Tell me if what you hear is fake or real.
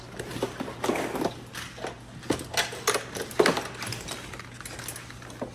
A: real